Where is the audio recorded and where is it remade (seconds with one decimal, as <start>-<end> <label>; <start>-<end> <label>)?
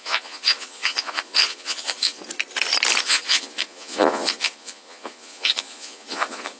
0.0-2.2 remade; 2.2-3.0 recorded; 3.0-6.6 remade